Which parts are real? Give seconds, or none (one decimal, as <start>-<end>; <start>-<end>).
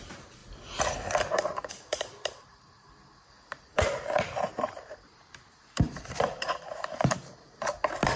0.4-1.7; 6.7-8.2